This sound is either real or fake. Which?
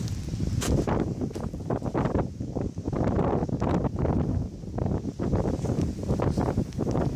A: real